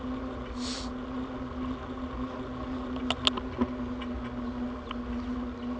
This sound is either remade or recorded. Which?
recorded